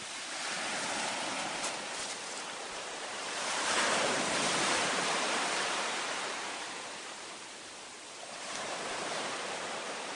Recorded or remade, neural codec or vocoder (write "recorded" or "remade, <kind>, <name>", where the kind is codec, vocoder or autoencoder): remade, vocoder, BigVGAN v2